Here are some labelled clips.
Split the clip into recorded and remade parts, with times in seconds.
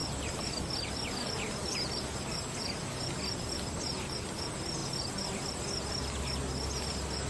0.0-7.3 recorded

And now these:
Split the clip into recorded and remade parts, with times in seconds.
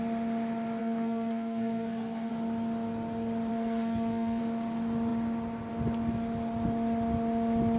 0.0-0.8 recorded; 0.8-2.3 remade; 2.3-3.5 recorded; 3.5-4.4 remade; 4.4-7.8 recorded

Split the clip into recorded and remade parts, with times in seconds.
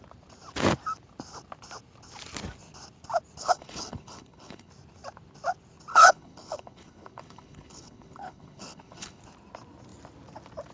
0.0-3.4 recorded; 3.4-4.7 remade; 4.7-5.9 recorded; 5.9-9.2 remade; 9.2-10.7 recorded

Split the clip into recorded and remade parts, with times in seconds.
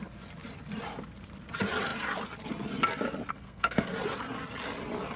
0.0-3.3 recorded; 3.3-3.9 remade; 3.9-5.2 recorded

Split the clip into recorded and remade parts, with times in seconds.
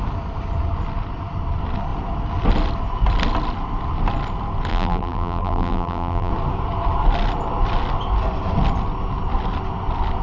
0.0-4.7 recorded; 4.7-6.3 remade; 6.3-10.2 recorded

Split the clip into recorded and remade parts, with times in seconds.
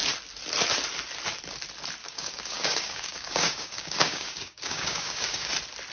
0.0-2.0 recorded; 2.0-5.5 remade; 5.5-5.9 recorded